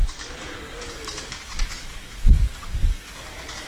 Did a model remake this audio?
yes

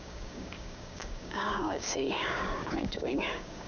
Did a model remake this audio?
yes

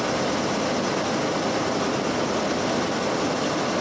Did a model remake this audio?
no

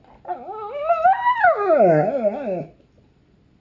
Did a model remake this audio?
no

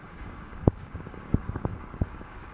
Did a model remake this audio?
yes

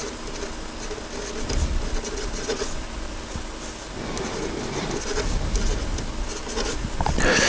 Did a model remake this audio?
no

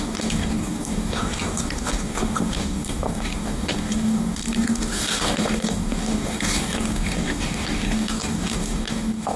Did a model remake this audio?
yes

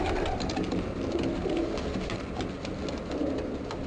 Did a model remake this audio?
no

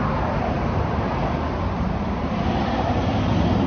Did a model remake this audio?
no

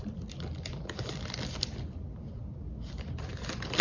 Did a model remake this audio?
no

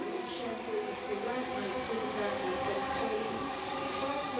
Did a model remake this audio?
yes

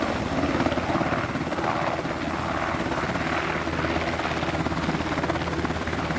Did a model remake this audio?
no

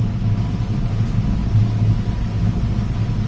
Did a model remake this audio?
no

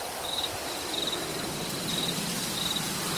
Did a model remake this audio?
no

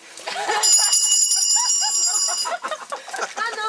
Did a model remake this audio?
no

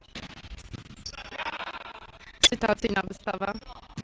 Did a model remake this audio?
no